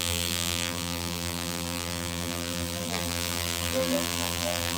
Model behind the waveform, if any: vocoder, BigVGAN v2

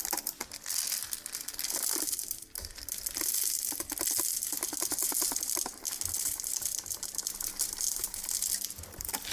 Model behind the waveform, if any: none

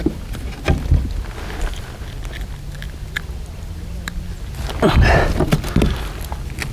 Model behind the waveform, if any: none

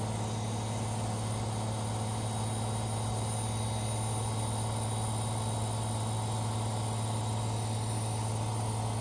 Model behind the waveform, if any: none